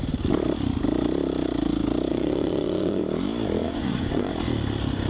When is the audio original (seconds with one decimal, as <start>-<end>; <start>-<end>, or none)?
0.0-2.1; 3.0-3.6; 4.3-5.1